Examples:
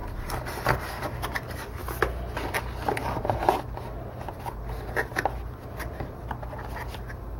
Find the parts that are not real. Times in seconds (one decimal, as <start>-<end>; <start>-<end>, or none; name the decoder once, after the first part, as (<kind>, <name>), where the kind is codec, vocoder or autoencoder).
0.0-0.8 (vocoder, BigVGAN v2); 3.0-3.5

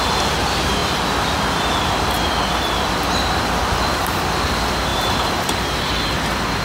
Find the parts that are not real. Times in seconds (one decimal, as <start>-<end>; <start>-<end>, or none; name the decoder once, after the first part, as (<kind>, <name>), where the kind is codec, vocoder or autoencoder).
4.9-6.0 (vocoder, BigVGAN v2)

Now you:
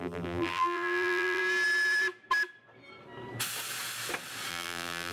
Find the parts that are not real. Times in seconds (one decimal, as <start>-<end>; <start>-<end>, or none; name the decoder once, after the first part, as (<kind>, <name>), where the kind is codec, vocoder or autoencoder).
0.0-1.4 (vocoder, BigVGAN v2); 4.5-5.1